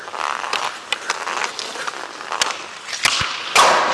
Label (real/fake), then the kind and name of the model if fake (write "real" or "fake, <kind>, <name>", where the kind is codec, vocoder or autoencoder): real